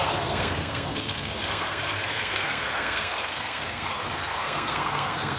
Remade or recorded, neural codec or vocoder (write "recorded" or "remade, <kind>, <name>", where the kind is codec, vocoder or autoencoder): remade, codec, SNAC